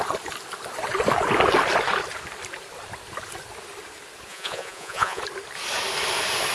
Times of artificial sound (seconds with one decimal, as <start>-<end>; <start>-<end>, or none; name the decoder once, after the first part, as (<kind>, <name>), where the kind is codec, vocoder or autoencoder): 4.3-5.2 (vocoder, Vocos)